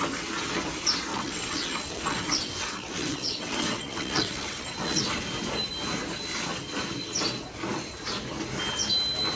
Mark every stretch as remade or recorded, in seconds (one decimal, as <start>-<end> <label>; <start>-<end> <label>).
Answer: 0.0-1.1 recorded; 1.1-5.0 remade; 5.0-9.4 recorded